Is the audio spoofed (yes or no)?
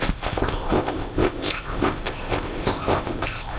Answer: yes